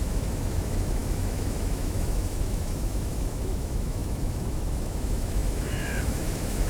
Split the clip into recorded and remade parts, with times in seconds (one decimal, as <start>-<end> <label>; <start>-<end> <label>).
0.0-6.7 remade